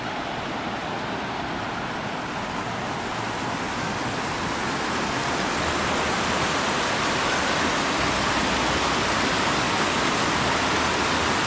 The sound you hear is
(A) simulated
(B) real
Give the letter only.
B